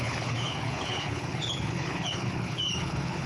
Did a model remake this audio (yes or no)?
yes